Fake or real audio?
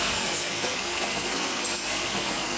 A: fake